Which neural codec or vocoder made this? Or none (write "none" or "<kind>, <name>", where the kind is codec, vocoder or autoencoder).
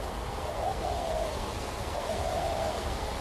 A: codec, SNAC